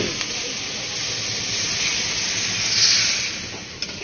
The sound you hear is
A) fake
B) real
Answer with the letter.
B